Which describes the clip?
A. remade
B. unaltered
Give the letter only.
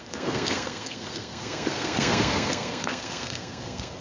A